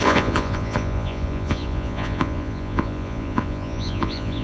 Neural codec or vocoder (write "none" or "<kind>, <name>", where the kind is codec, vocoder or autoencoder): vocoder, Vocos